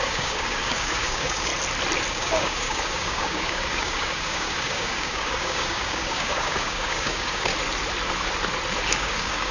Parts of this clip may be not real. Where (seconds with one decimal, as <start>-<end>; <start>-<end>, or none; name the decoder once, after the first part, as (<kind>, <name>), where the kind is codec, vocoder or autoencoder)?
0.0-1.5 (codec, DAC); 2.1-7.5; 8.9-9.5